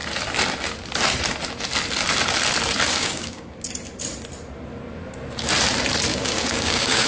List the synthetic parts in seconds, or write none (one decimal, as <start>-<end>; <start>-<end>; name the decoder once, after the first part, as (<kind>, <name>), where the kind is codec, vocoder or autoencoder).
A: 2.9-3.7 (codec, DAC); 6.1-7.1